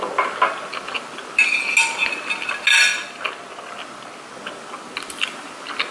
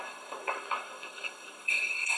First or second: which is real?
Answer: first